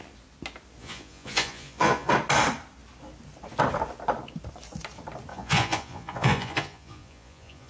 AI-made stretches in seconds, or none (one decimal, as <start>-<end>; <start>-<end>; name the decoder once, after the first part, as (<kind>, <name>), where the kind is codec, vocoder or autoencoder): 0.8-2.1 (vocoder, Vocos); 5.3-7.7

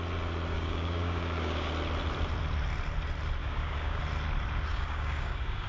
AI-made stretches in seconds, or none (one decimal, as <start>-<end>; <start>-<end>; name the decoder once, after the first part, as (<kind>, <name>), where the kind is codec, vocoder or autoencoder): 0.5-1.7 (codec, DAC); 3.4-4.0; 4.7-5.7

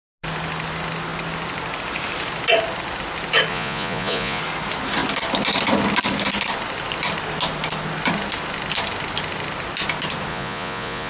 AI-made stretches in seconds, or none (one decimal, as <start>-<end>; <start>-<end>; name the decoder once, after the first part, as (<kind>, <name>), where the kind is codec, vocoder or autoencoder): 3.5-4.4 (vocoder, Vocos); 10.3-11.1

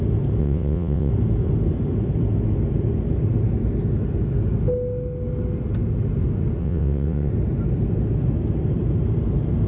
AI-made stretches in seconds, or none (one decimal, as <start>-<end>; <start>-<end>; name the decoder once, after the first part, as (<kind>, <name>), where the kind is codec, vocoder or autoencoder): 0.4-1.1 (vocoder, WaveNeXt); 6.6-7.3

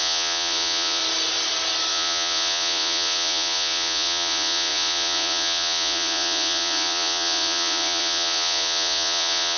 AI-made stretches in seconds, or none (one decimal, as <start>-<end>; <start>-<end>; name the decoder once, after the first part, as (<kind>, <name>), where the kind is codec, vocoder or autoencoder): 0.0-1.0 (vocoder, Vocos); 1.9-9.6